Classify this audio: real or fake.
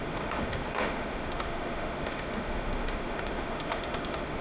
fake